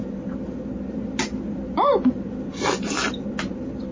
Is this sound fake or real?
real